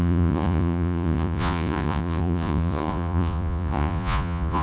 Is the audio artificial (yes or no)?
yes